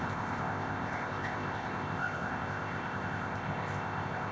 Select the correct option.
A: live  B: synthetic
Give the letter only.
B